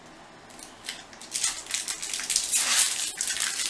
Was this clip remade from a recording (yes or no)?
no